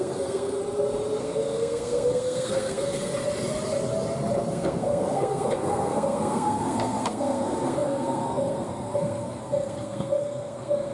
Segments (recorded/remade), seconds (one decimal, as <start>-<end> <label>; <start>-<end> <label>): 0.0-0.6 remade; 0.6-1.2 recorded; 1.2-3.1 remade; 3.1-4.5 recorded; 4.5-10.9 remade